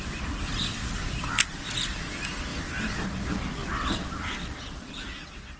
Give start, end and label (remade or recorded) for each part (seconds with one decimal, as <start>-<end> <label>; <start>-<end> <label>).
0.0-0.5 recorded; 0.5-1.6 remade; 1.6-2.5 recorded; 2.5-4.9 remade; 4.9-5.6 recorded